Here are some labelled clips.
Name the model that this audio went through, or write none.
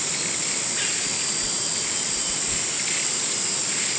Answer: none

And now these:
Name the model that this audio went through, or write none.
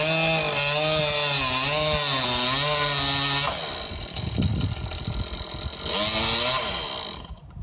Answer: none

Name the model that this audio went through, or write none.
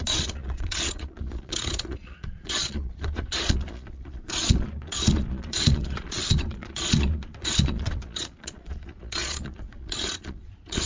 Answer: vocoder, Vocos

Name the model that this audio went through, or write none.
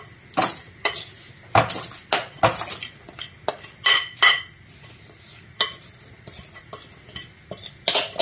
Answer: none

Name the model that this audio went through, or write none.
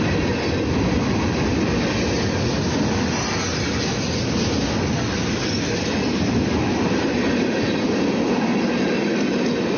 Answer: none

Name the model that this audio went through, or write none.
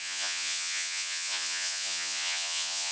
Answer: vocoder, Vocos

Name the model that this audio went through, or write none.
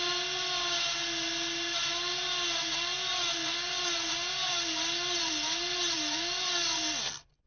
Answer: none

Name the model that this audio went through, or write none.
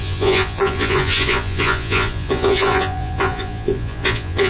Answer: vocoder, Vocos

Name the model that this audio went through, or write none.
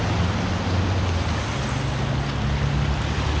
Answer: none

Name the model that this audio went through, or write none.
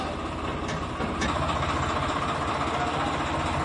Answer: none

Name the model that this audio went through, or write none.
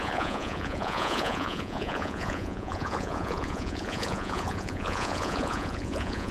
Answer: vocoder, Vocos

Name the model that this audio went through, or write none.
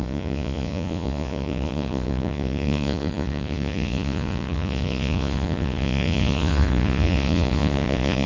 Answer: vocoder, Vocos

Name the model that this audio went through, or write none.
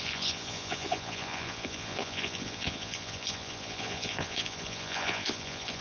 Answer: vocoder, Vocos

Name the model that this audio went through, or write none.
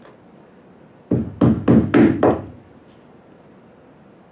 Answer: none